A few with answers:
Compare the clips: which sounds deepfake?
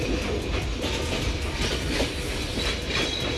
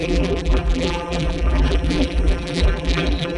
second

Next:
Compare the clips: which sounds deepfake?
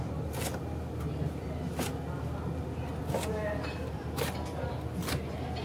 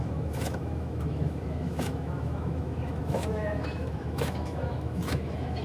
second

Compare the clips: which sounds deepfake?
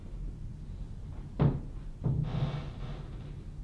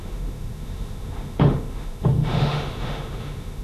second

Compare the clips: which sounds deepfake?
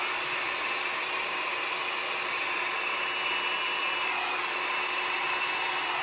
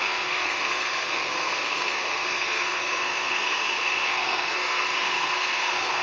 second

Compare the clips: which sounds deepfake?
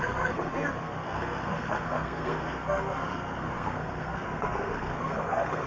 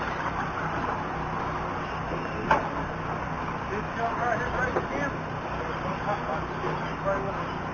first